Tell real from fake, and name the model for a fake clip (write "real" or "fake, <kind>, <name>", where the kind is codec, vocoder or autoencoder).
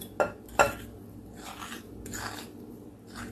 real